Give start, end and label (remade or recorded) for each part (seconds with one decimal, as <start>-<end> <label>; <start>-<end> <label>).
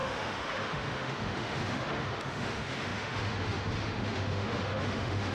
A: 0.0-5.3 remade